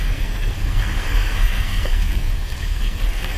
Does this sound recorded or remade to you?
remade